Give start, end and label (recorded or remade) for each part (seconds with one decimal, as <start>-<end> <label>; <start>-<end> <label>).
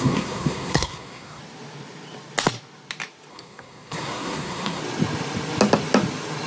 0.0-1.4 remade; 1.4-3.3 recorded; 3.3-4.8 remade; 4.8-6.5 recorded